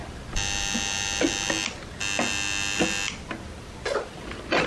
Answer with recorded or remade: recorded